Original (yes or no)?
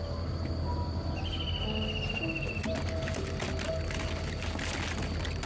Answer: yes